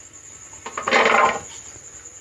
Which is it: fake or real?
real